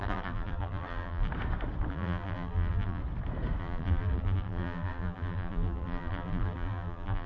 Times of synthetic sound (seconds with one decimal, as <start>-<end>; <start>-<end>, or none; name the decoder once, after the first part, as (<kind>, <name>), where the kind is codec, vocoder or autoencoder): 0.0-1.3 (vocoder, BigVGAN v2); 1.9-3.0; 3.6-7.3